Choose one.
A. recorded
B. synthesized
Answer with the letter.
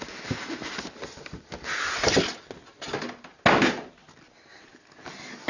A